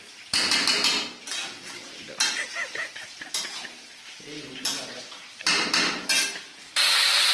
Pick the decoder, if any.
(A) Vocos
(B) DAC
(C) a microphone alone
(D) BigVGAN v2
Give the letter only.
C